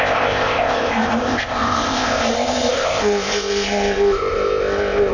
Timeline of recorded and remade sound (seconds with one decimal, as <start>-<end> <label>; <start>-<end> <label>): 0.0-5.1 remade